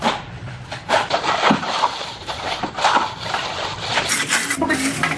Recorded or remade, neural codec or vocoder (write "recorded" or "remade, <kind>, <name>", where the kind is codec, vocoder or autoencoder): recorded